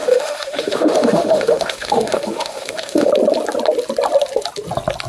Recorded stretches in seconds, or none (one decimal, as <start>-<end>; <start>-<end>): 3.1-5.1

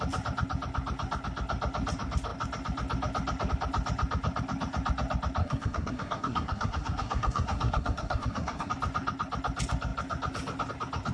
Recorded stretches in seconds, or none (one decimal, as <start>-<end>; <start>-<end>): 0.0-5.4; 8.7-11.1